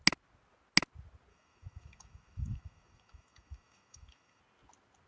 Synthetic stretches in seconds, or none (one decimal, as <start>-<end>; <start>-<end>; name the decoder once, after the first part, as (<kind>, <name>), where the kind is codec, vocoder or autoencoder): 1.3-4.4 (autoencoder, DAC-VAE)